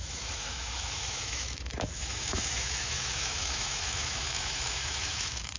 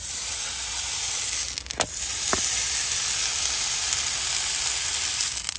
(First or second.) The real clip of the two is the second